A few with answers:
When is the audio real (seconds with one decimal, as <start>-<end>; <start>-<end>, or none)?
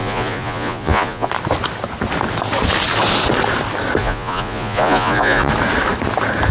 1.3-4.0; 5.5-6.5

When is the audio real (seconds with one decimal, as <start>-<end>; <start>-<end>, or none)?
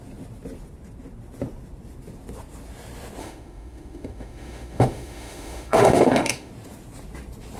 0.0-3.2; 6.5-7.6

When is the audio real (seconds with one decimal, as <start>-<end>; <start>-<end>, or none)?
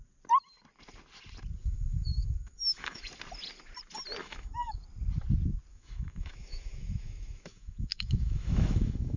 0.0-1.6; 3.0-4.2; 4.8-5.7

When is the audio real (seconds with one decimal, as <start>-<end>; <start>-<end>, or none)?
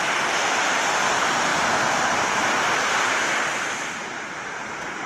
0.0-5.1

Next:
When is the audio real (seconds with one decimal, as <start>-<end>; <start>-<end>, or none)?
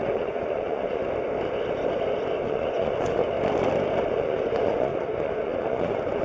1.0-2.4; 3.2-4.1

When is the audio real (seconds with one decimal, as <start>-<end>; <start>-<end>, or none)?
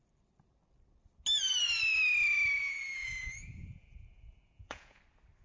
0.0-2.6; 5.0-5.4